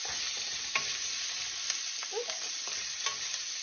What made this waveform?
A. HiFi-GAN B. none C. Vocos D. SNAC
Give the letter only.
B